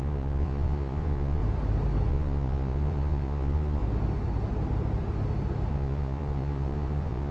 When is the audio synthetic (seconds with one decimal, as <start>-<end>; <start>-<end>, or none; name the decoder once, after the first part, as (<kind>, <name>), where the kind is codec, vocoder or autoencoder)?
0.0-1.4 (vocoder, Vocos); 2.1-3.8; 5.7-7.3